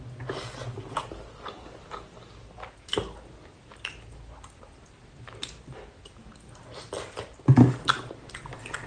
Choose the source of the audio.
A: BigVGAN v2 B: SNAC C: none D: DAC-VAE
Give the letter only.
C